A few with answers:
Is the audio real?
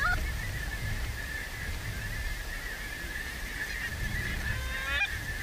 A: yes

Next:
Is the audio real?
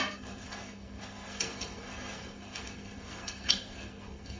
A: no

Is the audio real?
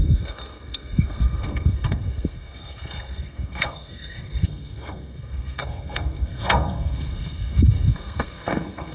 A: no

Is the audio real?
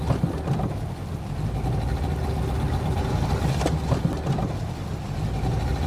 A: yes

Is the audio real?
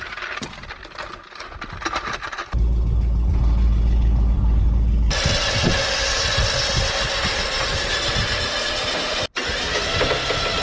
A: yes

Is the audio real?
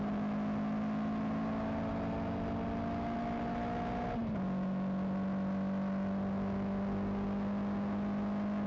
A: yes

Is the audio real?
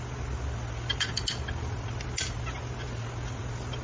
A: yes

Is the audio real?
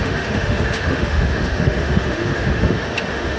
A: no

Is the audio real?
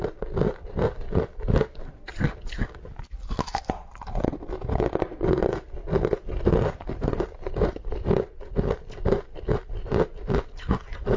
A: yes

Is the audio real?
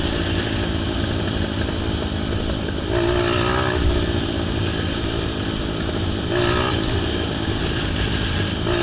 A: yes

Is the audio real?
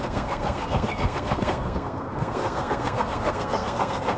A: no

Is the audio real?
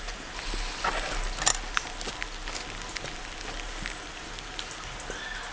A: yes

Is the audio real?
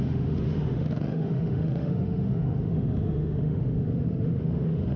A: no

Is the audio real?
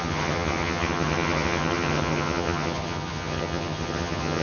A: no